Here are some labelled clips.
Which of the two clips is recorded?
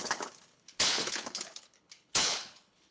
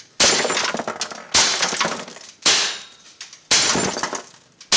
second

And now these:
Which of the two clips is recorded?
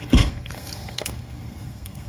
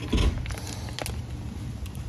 second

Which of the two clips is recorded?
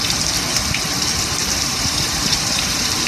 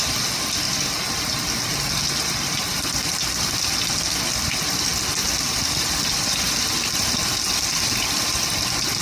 second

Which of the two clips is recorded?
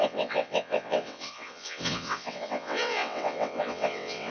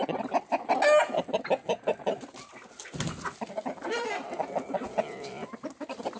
second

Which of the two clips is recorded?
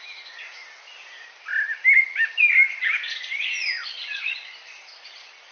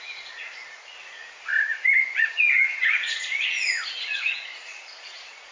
first